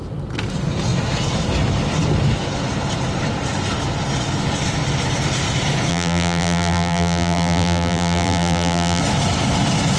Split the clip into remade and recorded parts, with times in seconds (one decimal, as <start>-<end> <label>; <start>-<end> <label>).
0.0-5.9 recorded; 5.9-9.0 remade; 9.0-10.0 recorded